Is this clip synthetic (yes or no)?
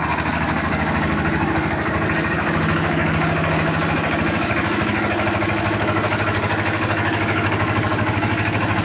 yes